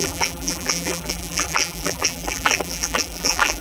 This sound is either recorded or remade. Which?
remade